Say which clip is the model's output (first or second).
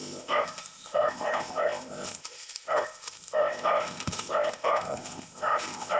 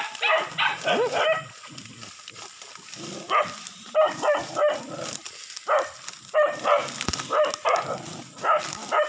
first